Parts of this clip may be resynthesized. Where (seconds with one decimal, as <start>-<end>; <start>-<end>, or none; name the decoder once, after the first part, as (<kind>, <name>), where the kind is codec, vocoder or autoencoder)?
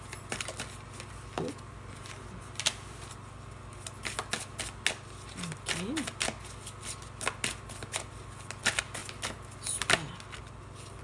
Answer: none